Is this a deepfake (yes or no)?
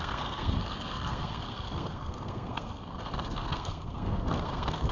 yes